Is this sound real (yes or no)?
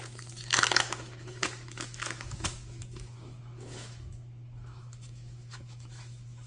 no